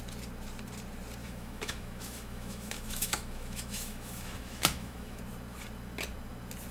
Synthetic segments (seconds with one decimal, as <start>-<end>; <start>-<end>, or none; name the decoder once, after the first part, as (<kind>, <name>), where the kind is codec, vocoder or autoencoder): 1.2-5.2 (autoencoder, DAC-VAE)